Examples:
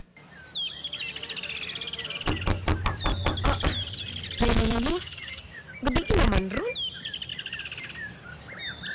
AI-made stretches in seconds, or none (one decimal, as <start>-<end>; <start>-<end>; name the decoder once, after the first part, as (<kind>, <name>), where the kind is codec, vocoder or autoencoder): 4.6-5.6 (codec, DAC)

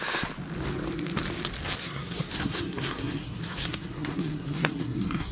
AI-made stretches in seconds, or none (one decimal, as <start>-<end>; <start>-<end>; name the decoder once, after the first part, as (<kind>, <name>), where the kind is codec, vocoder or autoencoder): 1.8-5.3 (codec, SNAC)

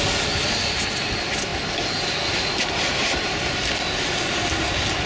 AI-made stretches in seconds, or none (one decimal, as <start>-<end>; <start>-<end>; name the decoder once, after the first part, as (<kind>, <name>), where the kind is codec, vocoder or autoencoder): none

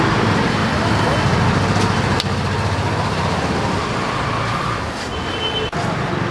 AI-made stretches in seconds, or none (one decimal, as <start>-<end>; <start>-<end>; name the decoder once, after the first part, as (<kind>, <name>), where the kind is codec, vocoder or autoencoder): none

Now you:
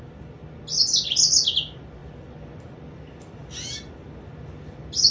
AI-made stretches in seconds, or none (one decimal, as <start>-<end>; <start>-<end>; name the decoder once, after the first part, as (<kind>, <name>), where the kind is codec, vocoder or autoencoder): none

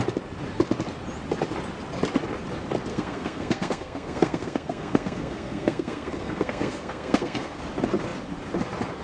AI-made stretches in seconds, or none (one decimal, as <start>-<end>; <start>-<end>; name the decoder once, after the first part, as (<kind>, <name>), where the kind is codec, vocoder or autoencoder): 2.9-7.6 (codec, SNAC)

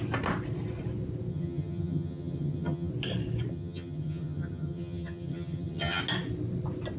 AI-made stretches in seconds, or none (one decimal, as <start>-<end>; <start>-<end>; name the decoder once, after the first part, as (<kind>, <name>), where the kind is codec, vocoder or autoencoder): 1.3-2.9 (vocoder, HiFi-GAN); 3.5-6.0